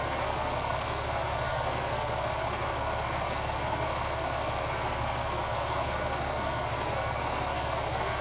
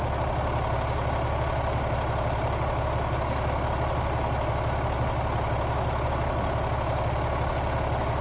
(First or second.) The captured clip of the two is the second